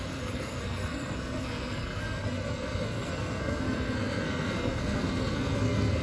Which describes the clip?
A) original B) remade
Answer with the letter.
B